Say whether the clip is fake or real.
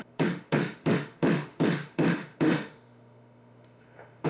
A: fake